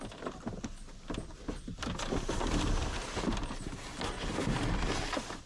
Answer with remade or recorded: recorded